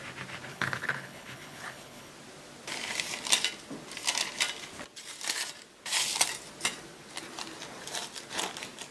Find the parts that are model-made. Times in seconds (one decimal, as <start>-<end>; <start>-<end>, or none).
0.5-2.1